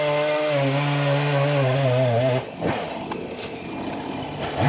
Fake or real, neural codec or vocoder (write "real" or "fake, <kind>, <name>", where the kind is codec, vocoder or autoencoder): real